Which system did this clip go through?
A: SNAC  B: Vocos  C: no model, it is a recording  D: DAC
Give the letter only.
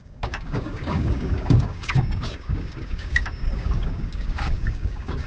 D